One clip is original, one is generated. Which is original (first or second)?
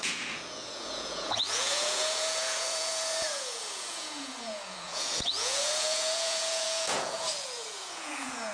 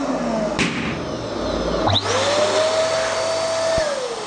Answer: second